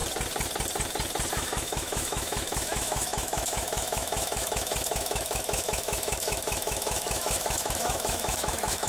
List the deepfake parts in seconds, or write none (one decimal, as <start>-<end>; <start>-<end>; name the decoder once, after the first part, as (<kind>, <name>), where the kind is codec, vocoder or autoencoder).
1.3-8.9 (autoencoder, DAC-VAE)